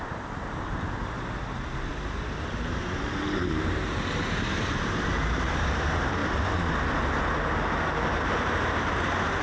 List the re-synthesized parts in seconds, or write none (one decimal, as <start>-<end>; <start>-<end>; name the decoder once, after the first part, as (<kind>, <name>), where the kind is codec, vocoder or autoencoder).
0.0-6.2 (vocoder, BigVGAN v2); 8.1-9.4